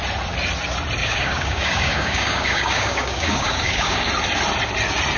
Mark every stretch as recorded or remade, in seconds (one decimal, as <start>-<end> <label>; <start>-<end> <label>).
0.0-1.0 recorded; 1.0-4.1 remade; 4.1-5.2 recorded

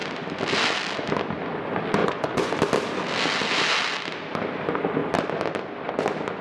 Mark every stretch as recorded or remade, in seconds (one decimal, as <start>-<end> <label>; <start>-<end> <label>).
0.0-2.0 recorded; 2.0-2.5 remade; 2.5-6.4 recorded

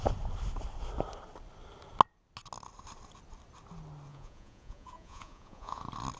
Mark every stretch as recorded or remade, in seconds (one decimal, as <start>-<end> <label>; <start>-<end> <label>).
0.0-4.1 recorded; 4.1-5.8 remade; 5.8-6.2 recorded

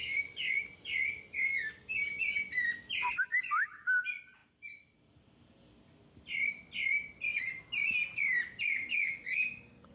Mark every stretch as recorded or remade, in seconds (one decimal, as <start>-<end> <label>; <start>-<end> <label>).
0.0-0.6 remade; 0.6-1.5 recorded; 1.5-2.2 remade; 2.2-8.9 recorded; 8.9-9.9 remade

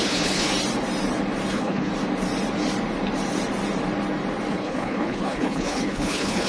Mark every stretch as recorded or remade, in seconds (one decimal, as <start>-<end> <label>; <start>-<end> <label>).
0.0-0.5 remade; 0.5-1.5 recorded; 1.5-1.9 remade; 1.9-4.5 recorded; 4.5-6.5 remade